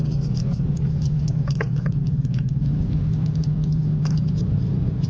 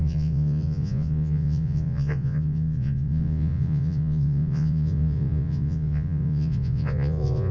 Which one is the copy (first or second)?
second